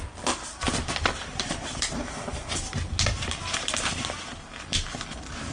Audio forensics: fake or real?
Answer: real